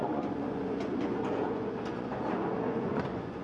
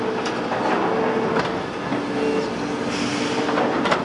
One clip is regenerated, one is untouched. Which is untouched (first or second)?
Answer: second